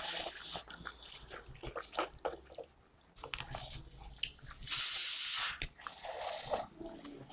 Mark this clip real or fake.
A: real